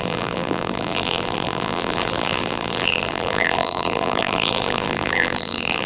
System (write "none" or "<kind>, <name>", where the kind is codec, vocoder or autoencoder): vocoder, BigVGAN v2